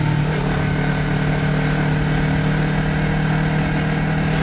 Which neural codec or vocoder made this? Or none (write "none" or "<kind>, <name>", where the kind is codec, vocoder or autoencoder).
none